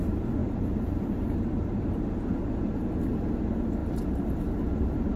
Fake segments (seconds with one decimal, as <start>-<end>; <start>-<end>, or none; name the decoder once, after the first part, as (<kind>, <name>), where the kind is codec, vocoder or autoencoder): 0.4-1.8 (vocoder, BigVGAN v2); 3.8-5.2